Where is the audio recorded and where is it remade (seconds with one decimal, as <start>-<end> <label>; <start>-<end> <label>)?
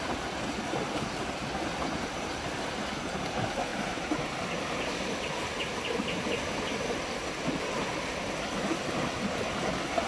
0.0-10.1 recorded